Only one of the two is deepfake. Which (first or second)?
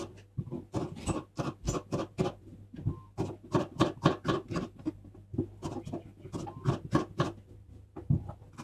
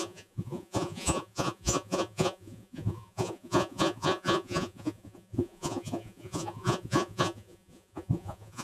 second